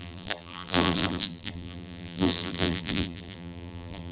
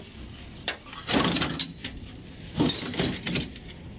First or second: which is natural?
second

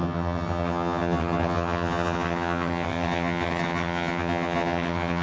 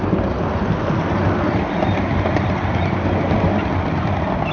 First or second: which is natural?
second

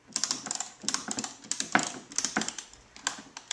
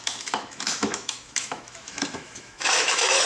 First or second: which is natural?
first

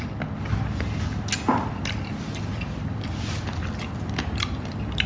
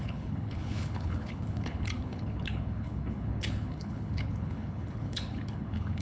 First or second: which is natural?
first